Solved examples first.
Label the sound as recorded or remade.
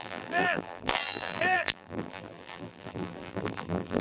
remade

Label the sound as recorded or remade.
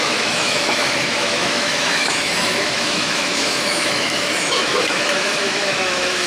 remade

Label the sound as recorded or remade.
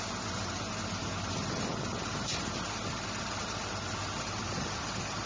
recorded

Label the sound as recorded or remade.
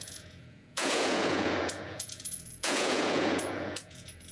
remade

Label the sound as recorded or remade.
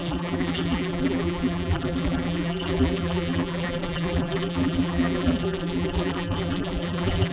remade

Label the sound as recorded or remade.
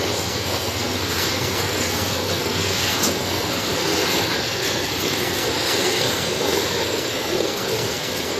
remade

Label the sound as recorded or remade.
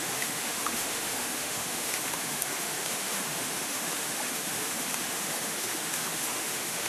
remade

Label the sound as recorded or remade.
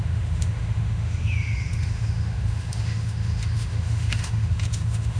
remade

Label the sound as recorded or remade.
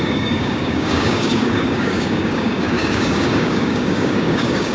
remade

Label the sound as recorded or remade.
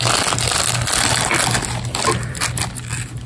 recorded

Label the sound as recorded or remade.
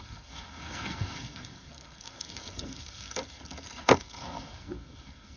remade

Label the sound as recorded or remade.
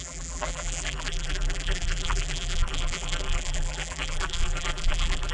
remade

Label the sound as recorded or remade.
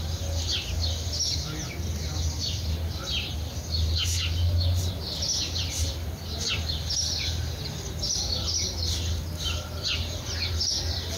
recorded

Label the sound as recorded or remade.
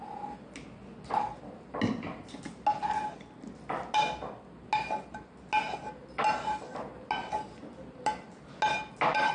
recorded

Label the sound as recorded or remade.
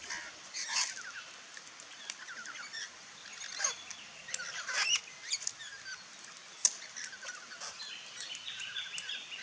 recorded